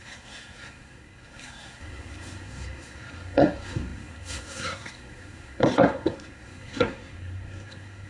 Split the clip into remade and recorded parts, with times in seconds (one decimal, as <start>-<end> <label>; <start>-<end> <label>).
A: 0.0-8.1 remade